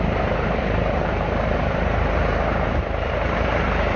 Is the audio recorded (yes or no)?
no